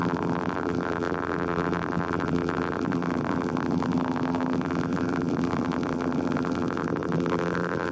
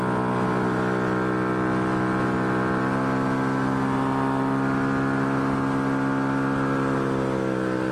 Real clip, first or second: second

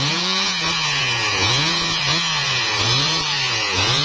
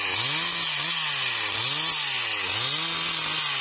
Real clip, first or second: second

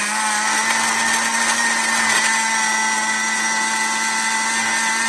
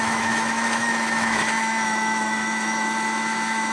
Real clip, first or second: first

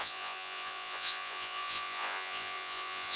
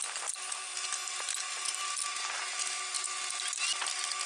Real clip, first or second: second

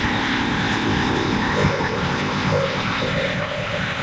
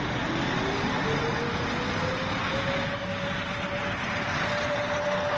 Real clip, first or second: second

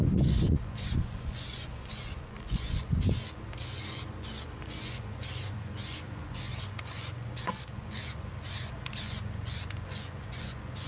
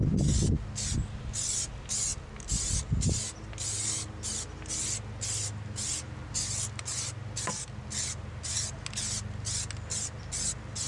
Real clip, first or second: second